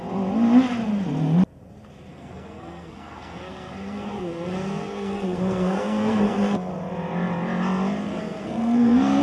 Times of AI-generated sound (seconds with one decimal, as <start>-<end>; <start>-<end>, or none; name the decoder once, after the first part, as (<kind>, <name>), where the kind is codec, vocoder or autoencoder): 2.1-6.7 (codec, SNAC); 8.1-9.2